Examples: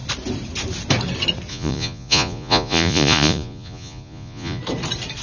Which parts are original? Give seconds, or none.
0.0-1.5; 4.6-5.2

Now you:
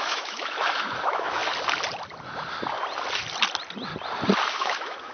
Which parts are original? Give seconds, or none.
1.4-4.5

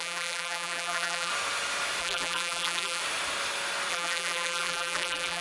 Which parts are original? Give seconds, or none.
1.3-2.0; 3.0-3.9

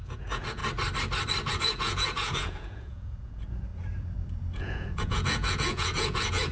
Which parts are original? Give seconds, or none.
0.6-1.5; 3.7-4.6

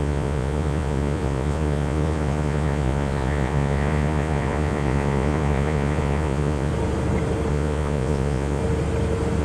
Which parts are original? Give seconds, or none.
6.7-7.5; 8.6-9.4

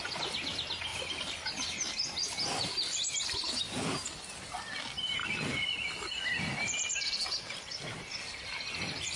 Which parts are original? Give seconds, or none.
0.0-0.9; 3.6-5.2; 7.8-9.2

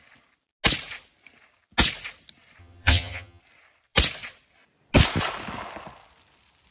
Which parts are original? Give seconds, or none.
0.0-2.6; 3.4-6.7